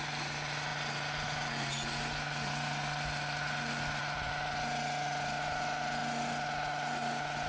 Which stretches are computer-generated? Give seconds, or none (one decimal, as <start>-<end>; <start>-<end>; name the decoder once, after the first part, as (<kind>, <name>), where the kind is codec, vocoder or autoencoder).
none